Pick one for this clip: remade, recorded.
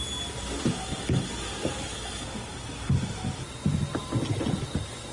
recorded